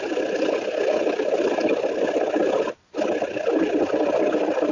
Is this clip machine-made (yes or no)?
no